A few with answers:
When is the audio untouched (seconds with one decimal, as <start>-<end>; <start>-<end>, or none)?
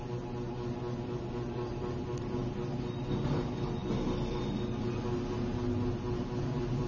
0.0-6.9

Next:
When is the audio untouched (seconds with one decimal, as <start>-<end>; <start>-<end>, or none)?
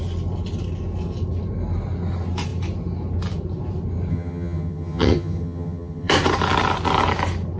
0.0-4.1; 6.1-7.6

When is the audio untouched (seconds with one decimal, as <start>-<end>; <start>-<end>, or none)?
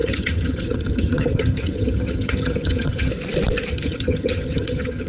3.1-3.7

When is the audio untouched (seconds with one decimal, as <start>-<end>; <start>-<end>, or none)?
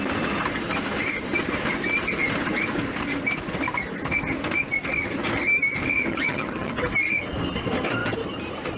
0.0-6.1; 6.7-8.8